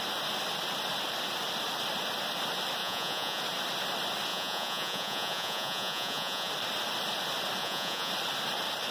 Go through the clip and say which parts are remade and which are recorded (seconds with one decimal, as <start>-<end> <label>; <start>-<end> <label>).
0.0-2.8 recorded; 2.8-3.4 remade; 3.4-4.3 recorded; 4.3-6.5 remade; 6.5-7.6 recorded; 7.6-8.1 remade; 8.1-8.9 recorded